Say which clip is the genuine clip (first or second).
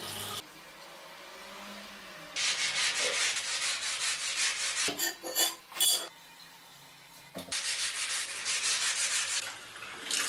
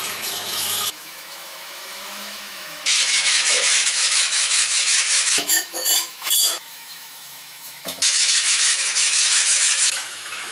first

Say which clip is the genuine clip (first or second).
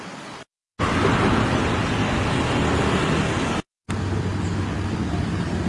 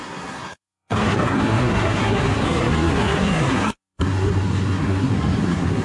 first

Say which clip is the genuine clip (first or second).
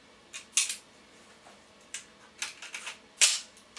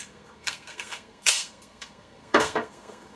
first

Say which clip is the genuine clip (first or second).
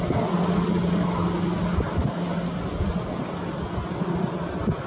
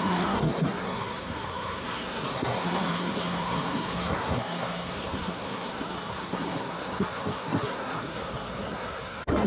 first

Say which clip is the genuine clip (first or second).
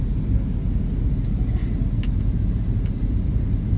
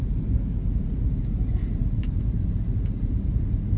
first